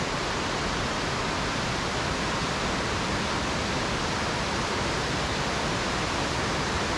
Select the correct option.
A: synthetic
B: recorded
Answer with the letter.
B